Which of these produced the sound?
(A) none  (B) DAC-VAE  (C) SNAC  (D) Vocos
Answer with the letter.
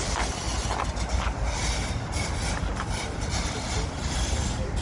A